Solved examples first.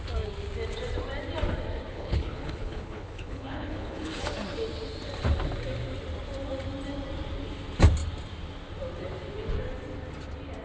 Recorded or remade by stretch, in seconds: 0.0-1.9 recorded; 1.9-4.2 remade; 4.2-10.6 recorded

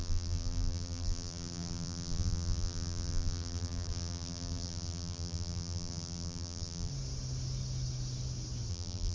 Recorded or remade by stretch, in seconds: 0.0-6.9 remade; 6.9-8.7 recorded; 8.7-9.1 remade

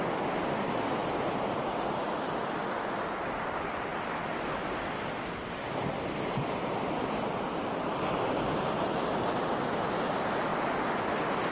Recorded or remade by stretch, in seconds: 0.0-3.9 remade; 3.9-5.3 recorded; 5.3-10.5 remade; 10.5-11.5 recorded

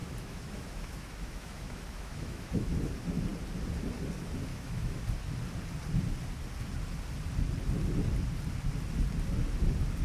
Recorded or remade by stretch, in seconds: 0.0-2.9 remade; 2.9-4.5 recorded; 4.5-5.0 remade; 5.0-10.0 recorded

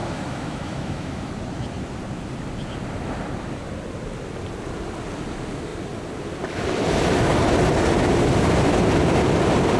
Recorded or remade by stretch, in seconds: 0.0-1.3 remade; 1.3-9.8 recorded

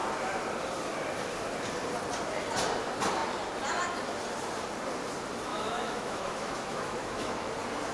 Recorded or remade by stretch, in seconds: 0.0-5.5 recorded; 5.5-7.5 remade; 7.5-7.9 recorded

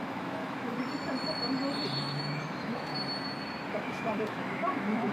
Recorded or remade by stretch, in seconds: 0.0-0.7 remade; 0.7-2.0 recorded; 2.0-2.9 remade; 2.9-3.7 recorded; 3.7-5.1 remade